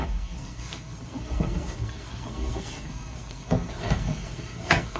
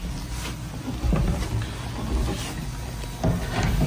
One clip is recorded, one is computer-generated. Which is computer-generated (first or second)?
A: first